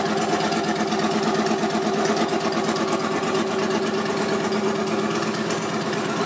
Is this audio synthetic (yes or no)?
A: no